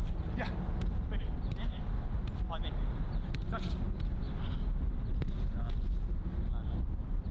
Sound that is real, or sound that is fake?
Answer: real